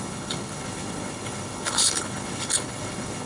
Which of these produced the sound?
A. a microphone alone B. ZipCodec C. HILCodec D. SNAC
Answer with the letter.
C